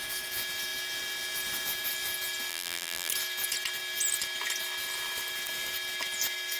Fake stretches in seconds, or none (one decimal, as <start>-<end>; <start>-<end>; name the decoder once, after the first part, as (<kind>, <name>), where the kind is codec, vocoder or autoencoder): 2.5-3.1 (vocoder, BigVGAN v2)